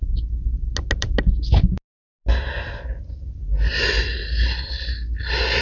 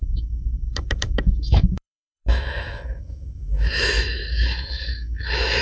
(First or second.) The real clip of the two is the first